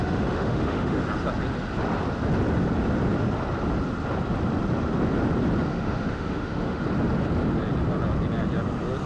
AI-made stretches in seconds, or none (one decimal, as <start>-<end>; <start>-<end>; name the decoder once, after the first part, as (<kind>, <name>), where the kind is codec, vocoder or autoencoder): 0.0-1.0 (autoencoder, DAC-VAE); 5.7-6.8